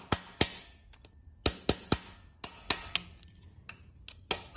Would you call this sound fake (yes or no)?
no